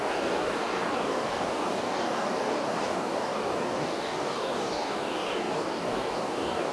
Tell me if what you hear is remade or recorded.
remade